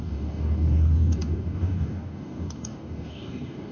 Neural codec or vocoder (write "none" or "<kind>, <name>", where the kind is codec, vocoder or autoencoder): codec, DAC